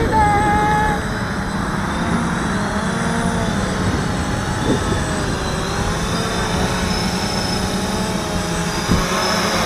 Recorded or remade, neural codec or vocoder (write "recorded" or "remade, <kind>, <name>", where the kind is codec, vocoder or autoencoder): recorded